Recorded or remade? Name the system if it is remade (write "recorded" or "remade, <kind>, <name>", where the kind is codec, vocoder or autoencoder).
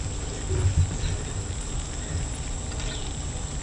recorded